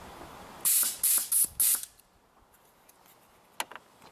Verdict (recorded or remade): recorded